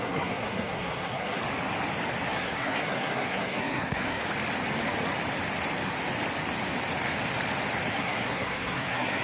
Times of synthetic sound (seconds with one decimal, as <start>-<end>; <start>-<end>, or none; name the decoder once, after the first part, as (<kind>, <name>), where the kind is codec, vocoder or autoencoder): 0.0-1.4 (codec, SNAC); 2.3-4.2; 7.9-9.2